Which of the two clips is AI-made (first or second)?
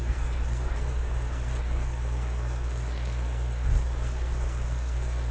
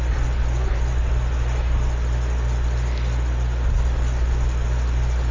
first